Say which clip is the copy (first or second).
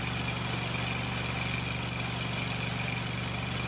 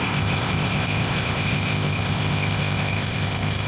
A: second